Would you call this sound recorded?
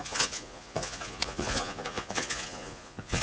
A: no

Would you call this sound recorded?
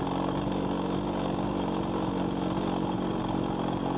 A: yes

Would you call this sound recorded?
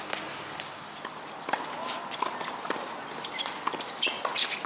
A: yes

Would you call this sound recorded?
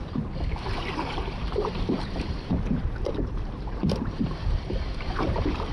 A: no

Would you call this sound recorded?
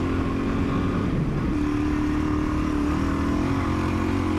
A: yes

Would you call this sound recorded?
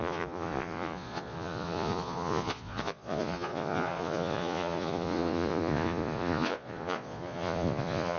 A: no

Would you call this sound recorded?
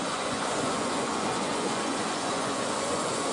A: no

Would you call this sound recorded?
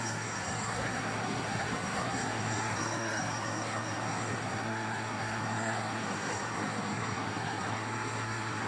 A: no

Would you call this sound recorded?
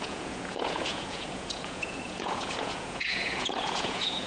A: no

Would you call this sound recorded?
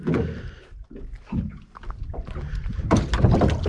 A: yes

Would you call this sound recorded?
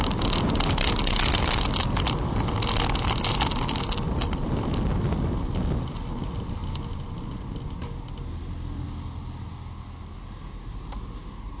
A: yes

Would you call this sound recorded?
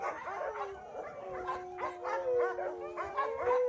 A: yes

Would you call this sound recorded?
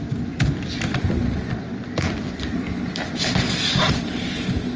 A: yes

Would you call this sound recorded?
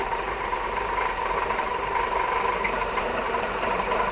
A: no